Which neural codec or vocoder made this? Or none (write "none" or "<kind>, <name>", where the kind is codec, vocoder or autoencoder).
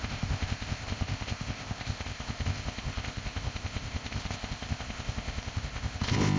codec, ZipCodec